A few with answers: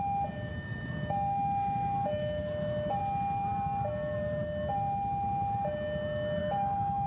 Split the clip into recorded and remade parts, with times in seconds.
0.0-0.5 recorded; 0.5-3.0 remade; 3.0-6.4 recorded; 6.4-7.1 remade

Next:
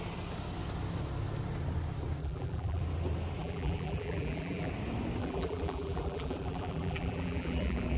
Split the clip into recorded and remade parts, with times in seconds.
0.0-2.2 recorded; 2.2-2.8 remade; 2.8-3.4 recorded; 3.4-4.7 remade; 4.7-5.2 recorded; 5.2-8.0 remade

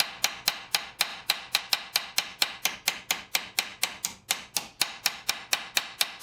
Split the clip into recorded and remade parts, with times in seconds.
0.0-1.1 recorded; 1.1-1.6 remade; 1.6-6.2 recorded

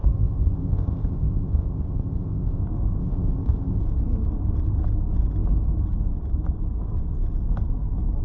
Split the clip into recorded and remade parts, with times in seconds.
0.0-2.6 remade; 2.6-3.0 recorded; 3.0-3.8 remade; 3.8-8.2 recorded

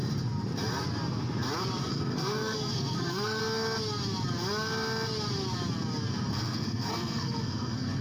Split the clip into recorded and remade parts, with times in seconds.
0.0-1.8 recorded; 1.8-3.4 remade; 3.4-6.3 recorded; 6.3-8.0 remade